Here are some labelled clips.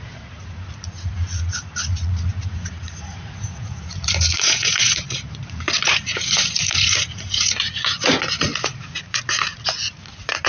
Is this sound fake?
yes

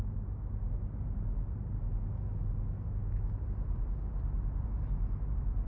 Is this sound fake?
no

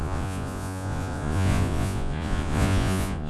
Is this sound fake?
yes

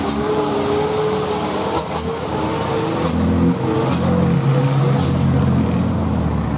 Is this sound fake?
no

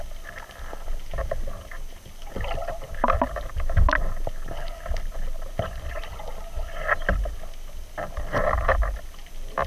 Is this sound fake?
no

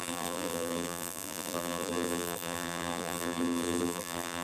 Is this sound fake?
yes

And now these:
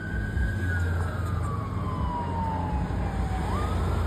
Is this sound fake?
no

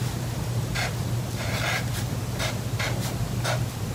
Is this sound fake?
no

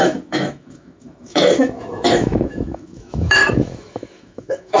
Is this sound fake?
yes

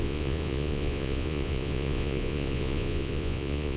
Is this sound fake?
yes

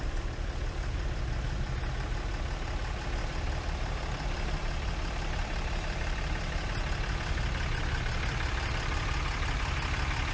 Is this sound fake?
no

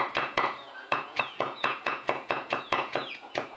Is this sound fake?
yes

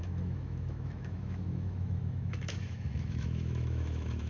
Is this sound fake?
yes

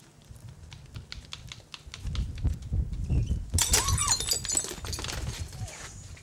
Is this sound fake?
no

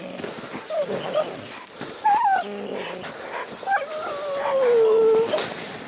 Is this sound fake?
no